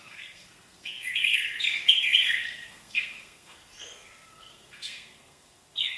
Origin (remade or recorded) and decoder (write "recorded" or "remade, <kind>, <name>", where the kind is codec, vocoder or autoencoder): remade, codec, SNAC